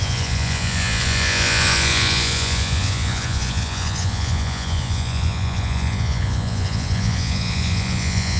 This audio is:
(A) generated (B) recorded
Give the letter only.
A